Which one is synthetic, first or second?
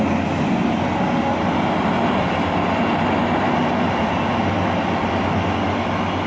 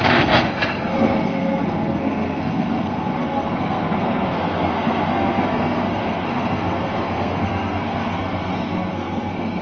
second